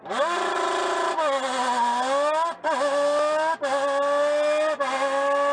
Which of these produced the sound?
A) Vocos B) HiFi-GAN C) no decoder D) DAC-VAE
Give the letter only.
C